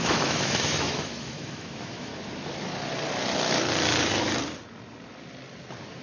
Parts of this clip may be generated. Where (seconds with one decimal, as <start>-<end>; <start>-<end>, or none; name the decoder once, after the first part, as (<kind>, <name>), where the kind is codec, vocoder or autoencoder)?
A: 0.0-2.1 (autoencoder, DAC-VAE)